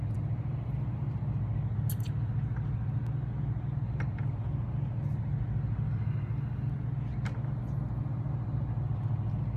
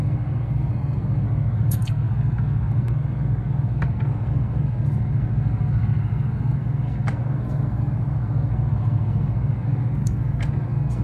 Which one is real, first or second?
first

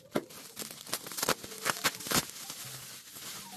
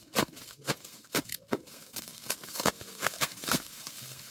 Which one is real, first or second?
first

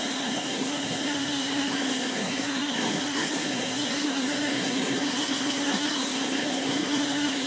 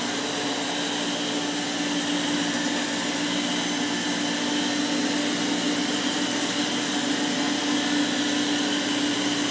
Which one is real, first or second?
second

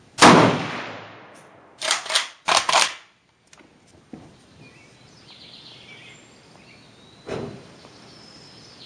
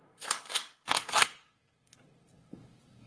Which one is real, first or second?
first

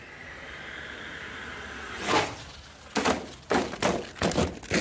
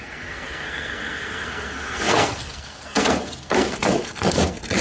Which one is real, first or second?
first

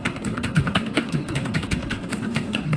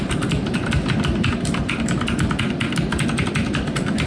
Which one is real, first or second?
second